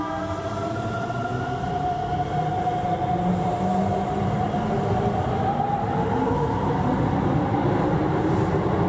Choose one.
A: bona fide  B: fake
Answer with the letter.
A